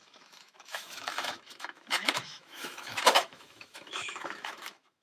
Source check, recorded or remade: remade